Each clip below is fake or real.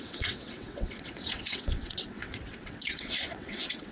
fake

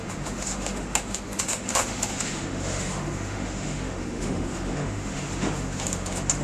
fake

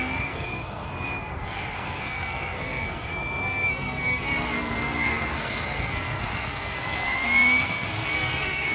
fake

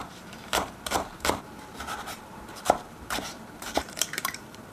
fake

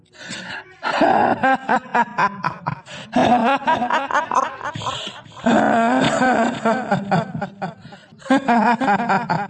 real